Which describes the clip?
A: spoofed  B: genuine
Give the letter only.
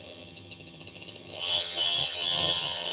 A